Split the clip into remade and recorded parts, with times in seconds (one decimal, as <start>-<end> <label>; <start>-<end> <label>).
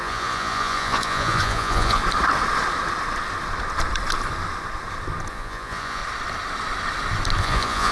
0.0-2.0 remade; 2.0-5.3 recorded; 5.3-6.0 remade; 6.0-7.4 recorded; 7.4-7.9 remade